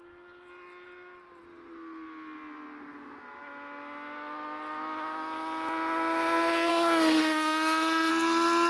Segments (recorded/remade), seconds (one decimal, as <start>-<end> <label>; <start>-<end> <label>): 0.0-6.7 recorded; 6.7-8.1 remade; 8.1-8.7 recorded